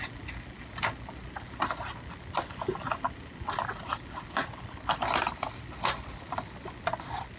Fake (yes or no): no